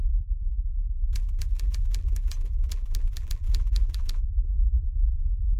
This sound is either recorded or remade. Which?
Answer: remade